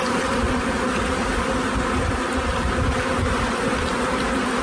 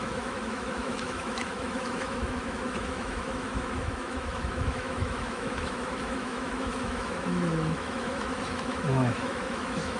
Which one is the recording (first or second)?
first